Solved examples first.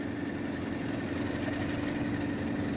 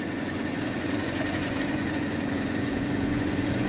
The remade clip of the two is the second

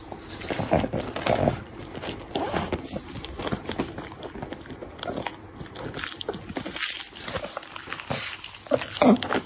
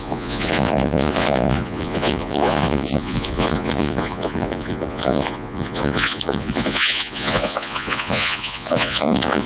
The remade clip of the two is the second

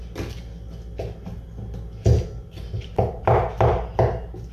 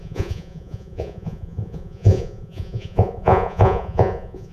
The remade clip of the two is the second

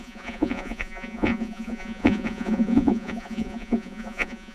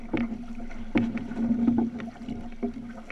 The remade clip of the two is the first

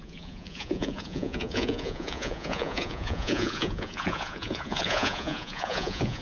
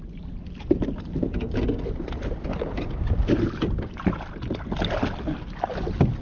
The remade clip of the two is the first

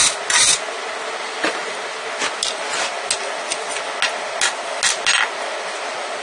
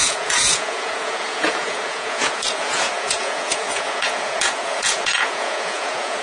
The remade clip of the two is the second